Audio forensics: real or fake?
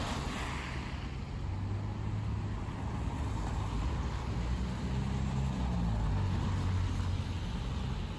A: real